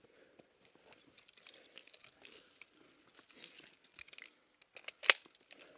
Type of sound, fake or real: real